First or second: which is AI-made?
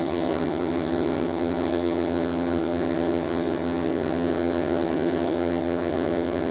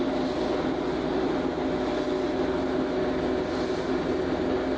first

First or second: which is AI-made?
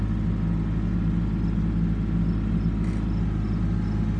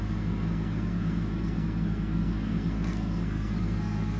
second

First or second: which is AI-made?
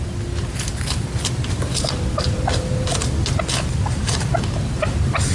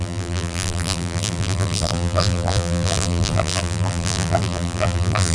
second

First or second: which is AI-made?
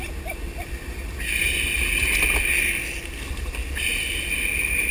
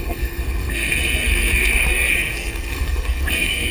second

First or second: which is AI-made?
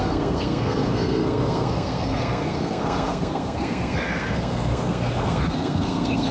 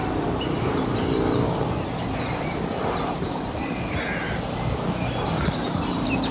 first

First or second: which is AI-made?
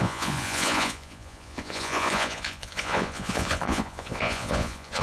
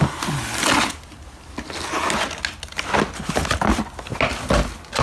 first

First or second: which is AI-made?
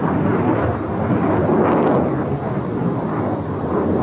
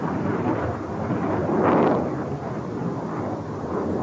second